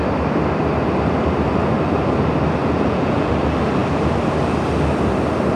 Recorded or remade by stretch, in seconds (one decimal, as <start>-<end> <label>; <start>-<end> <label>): 0.0-2.6 recorded; 2.6-3.3 remade; 3.3-5.6 recorded